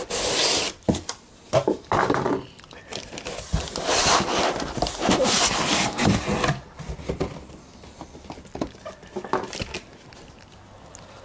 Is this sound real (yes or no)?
yes